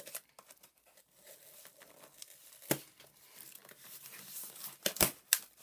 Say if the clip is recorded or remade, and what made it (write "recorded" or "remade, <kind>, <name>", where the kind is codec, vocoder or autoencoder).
recorded